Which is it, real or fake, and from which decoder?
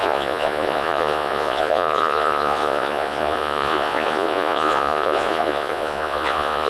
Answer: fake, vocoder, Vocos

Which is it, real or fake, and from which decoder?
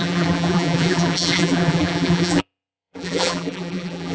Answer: fake, vocoder, BigVGAN v2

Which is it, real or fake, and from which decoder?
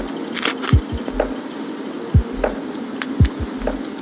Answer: real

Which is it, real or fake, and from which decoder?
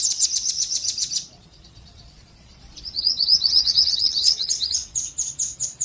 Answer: fake, vocoder, Vocos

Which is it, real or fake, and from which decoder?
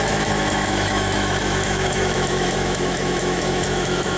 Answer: fake, autoencoder, DAC-VAE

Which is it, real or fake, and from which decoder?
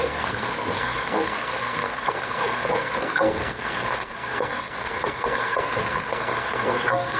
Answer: fake, codec, SNAC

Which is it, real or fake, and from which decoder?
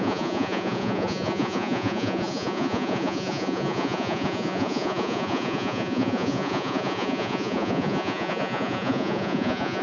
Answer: fake, vocoder, Vocos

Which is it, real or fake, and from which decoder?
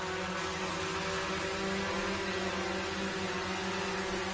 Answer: real